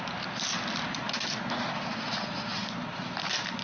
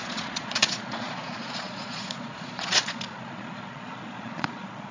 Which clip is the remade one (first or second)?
second